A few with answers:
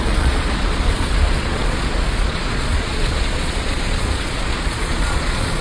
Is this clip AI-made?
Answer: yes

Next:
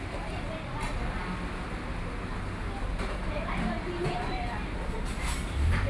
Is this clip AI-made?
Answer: no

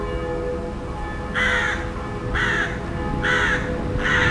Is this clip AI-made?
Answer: no